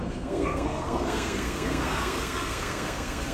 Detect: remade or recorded remade